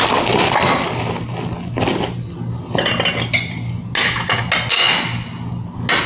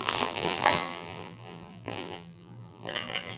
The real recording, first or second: first